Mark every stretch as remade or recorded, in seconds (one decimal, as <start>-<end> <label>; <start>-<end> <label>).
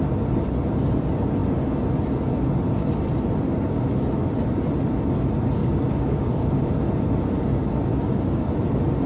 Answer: 0.0-5.6 recorded; 5.6-6.5 remade; 6.5-7.9 recorded; 7.9-8.5 remade; 8.5-9.1 recorded